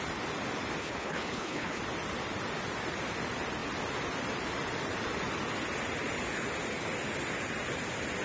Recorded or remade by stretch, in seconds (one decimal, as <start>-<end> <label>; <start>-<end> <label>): 0.0-0.8 recorded; 0.8-1.8 remade; 1.8-8.2 recorded